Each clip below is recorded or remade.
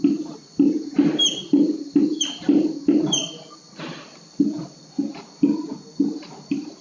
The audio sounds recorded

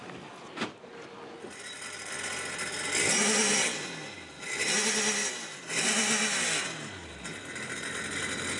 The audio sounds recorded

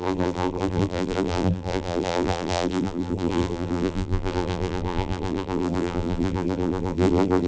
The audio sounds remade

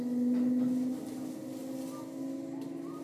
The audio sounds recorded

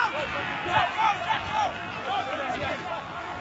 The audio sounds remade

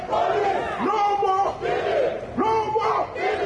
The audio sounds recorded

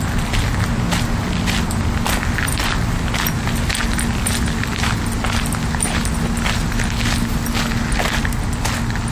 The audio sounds recorded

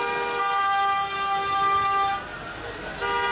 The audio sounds recorded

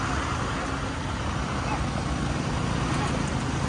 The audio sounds recorded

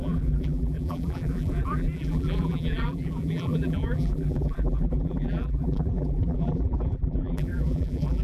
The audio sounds remade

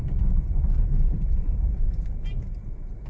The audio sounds remade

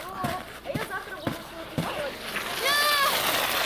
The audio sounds recorded